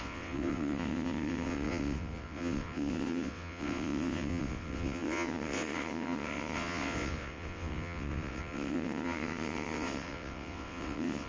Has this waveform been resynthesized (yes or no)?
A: yes